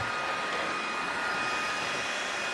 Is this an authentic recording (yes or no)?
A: yes